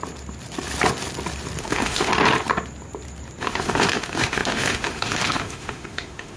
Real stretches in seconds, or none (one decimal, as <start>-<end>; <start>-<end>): 0.0-1.6; 2.1-3.4